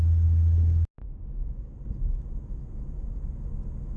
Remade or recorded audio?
recorded